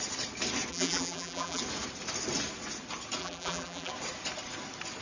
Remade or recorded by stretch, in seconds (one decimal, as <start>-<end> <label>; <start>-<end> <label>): 0.0-0.7 recorded; 0.7-1.6 remade; 1.6-3.2 recorded; 3.2-3.9 remade; 3.9-5.0 recorded